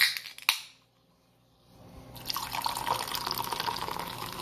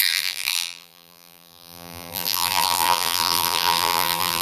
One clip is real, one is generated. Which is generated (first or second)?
second